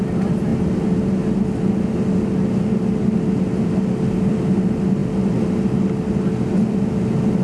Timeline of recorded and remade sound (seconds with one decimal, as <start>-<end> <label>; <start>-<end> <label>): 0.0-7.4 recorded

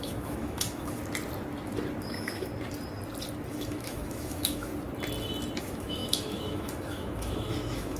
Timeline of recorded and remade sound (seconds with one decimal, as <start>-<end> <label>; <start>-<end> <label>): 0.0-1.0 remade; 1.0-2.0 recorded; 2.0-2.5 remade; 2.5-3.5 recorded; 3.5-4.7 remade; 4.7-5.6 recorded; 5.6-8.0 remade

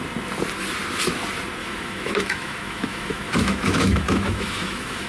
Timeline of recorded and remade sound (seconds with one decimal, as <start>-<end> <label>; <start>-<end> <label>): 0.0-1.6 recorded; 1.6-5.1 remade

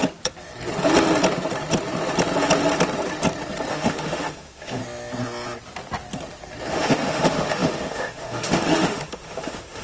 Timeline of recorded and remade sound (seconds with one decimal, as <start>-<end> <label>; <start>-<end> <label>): 0.0-3.7 recorded; 3.7-4.8 remade; 4.8-6.7 recorded; 6.7-9.8 remade

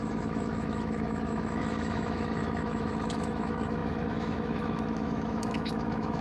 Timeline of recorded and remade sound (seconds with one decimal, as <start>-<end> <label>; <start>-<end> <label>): 0.0-6.2 remade